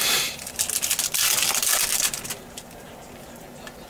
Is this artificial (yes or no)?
no